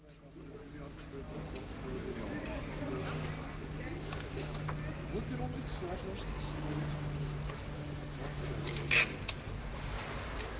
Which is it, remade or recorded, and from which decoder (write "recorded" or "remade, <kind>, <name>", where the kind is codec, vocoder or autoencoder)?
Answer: recorded